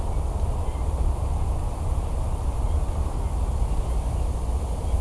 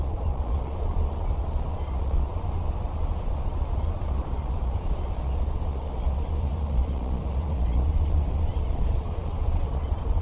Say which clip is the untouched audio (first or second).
first